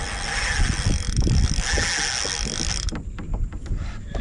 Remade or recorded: recorded